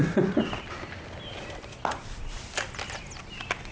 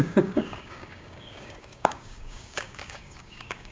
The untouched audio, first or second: first